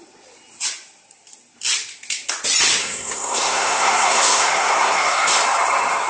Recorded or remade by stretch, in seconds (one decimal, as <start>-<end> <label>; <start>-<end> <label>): 0.0-2.8 recorded; 2.8-5.3 remade; 5.3-6.1 recorded